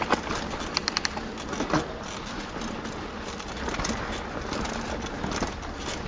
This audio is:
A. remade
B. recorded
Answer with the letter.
B